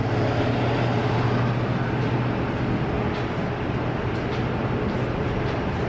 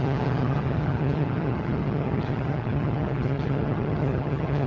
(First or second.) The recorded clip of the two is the first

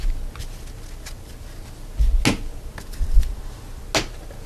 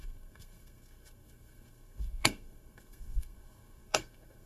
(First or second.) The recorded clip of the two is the first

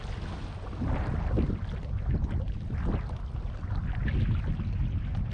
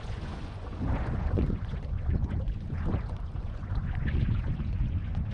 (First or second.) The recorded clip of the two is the first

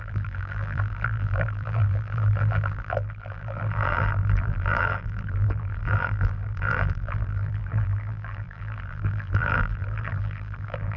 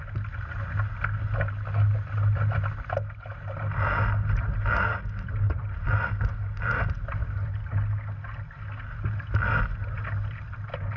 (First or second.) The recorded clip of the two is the second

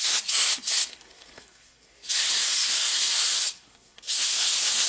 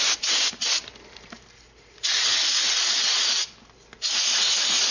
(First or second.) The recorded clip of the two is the second